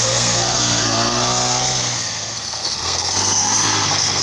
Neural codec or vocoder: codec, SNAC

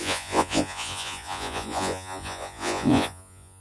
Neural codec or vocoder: vocoder, Vocos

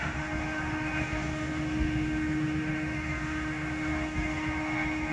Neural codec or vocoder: autoencoder, DAC-VAE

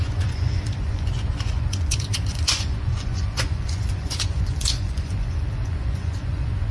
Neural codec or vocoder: vocoder, Vocos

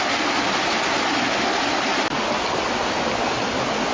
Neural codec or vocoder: none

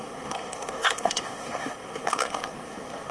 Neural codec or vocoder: codec, SNAC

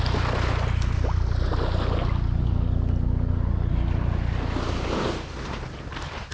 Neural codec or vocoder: none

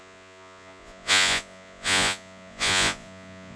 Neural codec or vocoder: vocoder, Vocos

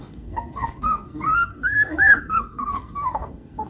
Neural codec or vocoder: codec, SNAC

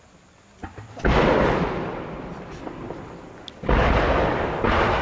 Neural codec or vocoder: none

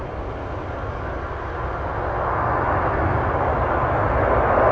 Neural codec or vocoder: none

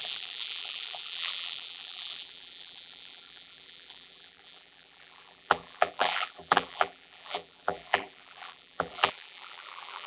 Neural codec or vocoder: vocoder, BigVGAN v2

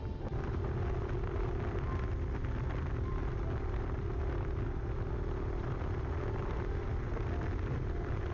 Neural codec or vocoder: none